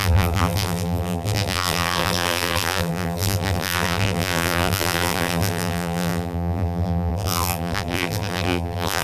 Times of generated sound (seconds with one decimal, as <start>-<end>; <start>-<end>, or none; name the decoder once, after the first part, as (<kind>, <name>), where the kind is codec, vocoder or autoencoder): 0.0-9.0 (vocoder, BigVGAN v2)